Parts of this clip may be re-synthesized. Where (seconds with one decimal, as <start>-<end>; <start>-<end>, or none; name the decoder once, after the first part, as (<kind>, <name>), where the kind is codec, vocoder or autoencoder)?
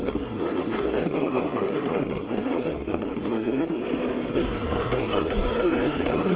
0.0-3.8 (codec, SNAC); 4.3-6.4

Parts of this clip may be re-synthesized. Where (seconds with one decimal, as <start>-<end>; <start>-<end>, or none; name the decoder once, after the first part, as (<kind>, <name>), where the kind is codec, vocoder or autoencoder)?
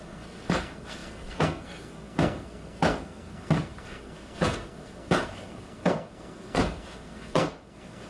0.0-8.1 (codec, SNAC)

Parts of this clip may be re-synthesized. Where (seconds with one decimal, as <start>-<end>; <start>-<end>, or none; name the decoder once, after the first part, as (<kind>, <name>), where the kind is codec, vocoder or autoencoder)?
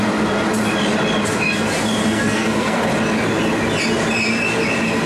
2.0-2.8 (codec, SNAC)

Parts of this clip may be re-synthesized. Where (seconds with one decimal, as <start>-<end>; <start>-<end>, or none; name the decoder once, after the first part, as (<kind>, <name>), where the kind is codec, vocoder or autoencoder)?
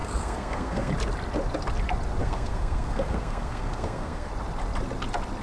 0.0-0.9 (codec, SNAC); 2.2-4.3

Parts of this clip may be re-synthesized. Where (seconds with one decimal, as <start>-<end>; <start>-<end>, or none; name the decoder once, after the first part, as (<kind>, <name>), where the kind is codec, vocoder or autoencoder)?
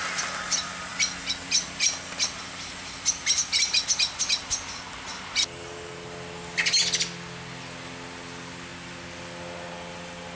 none